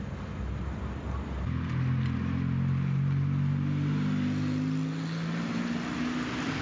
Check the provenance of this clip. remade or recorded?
recorded